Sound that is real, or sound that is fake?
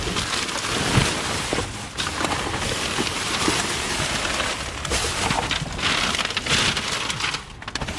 real